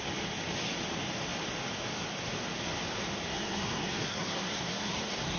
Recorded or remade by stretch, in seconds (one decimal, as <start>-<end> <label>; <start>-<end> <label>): 0.0-3.3 recorded; 3.3-5.4 remade

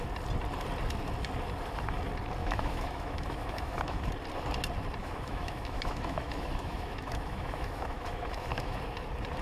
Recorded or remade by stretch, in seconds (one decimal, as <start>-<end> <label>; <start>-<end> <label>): 0.0-2.4 recorded; 2.4-4.1 remade; 4.1-5.0 recorded; 5.0-8.8 remade; 8.8-9.4 recorded

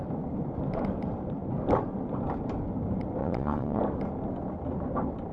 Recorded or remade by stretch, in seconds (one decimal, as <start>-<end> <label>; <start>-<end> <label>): 0.0-3.2 recorded; 3.2-3.8 remade; 3.8-5.3 recorded